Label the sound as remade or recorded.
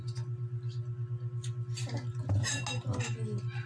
recorded